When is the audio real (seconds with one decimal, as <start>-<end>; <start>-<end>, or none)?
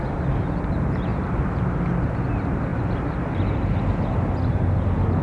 0.0-5.2